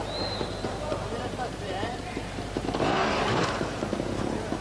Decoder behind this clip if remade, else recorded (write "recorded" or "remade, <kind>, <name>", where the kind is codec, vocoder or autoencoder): remade, vocoder, BigVGAN v2